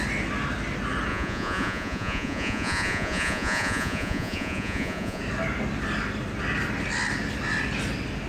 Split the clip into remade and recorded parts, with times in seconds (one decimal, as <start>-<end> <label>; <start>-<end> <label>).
0.0-1.1 recorded; 1.1-5.2 remade; 5.2-8.3 recorded